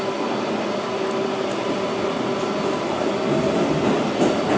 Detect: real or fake real